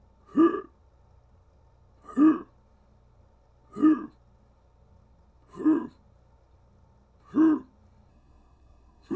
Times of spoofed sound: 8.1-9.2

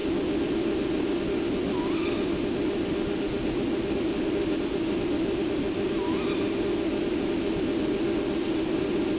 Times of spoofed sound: none

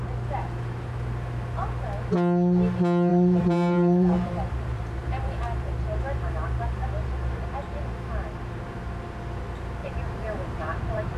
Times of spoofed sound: 3.1-6.3; 9.8-11.2

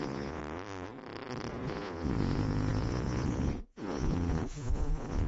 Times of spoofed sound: 0.0-0.4; 1.5-5.3

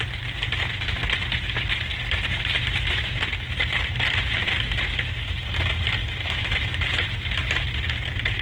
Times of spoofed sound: 1.9-4.6; 6.0-8.4

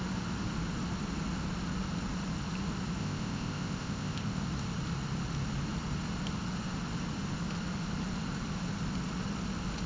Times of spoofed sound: 3.0-4.4